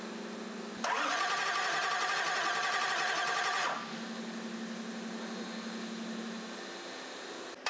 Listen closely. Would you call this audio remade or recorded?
recorded